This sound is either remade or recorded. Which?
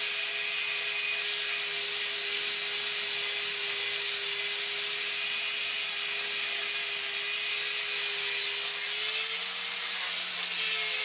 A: recorded